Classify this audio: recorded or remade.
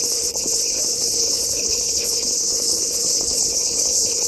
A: remade